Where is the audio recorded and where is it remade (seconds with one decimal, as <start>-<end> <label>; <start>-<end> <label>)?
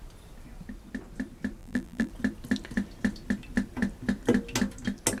0.0-1.6 recorded; 1.6-2.1 remade; 2.1-5.2 recorded